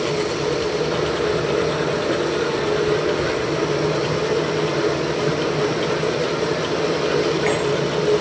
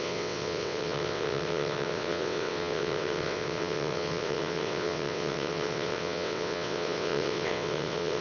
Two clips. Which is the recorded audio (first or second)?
first